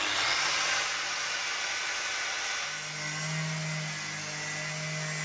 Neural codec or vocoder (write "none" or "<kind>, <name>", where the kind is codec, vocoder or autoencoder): none